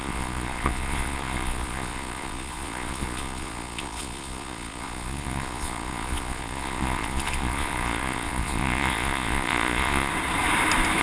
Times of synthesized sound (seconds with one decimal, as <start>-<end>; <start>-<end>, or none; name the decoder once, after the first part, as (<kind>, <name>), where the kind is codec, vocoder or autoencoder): 0.0-10.1 (vocoder, Vocos)